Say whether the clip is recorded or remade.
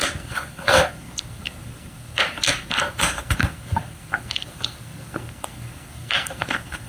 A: remade